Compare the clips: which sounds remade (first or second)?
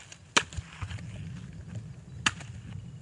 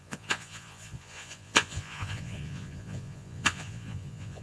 second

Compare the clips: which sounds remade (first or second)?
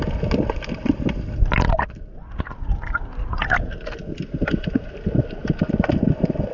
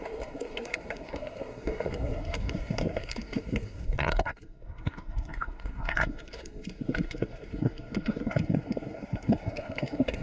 second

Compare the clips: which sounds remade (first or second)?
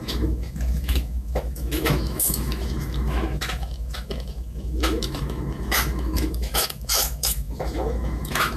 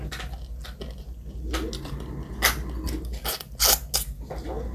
first